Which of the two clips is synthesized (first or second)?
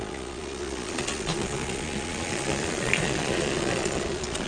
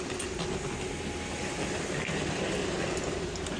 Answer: first